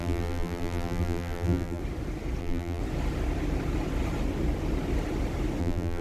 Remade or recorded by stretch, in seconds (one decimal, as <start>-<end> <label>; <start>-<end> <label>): 0.0-1.8 remade; 1.8-2.4 recorded; 2.4-2.8 remade; 2.8-5.6 recorded; 5.6-6.0 remade